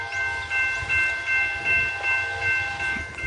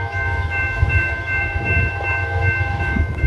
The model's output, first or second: second